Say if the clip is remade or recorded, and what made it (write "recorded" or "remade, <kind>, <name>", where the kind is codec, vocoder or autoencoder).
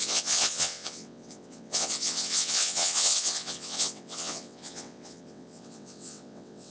remade, vocoder, WaveNeXt